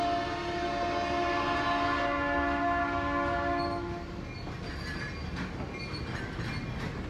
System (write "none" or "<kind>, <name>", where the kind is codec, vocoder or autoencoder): none